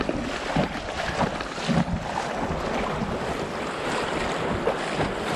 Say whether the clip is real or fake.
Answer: real